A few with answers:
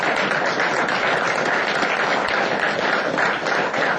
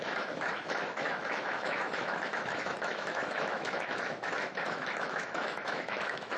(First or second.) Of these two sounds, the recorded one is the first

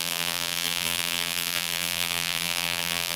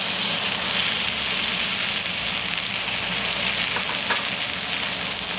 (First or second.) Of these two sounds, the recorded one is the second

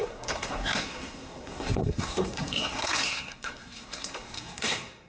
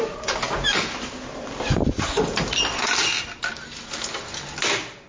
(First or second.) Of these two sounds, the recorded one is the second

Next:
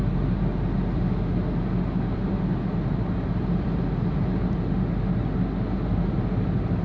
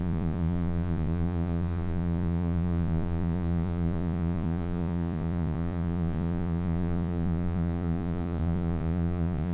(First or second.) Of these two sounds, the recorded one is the first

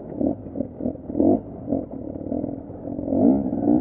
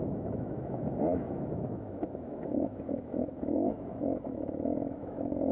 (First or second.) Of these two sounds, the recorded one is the first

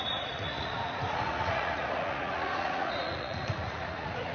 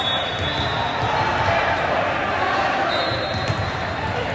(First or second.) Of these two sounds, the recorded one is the second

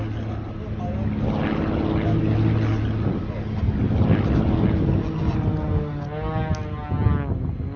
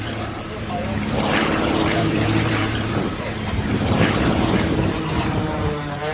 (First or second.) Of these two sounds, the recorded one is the first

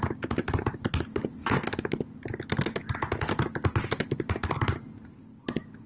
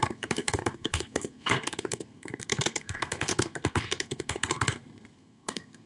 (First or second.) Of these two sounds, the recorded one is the first